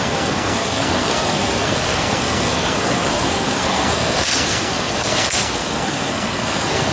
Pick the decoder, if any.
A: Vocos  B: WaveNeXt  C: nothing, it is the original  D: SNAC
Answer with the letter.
D